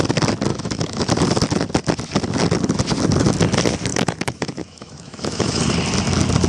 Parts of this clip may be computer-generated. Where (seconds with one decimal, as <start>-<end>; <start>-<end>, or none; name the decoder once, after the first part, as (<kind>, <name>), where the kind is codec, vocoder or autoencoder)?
0.5-1.1 (autoencoder, DAC-VAE); 3.9-5.6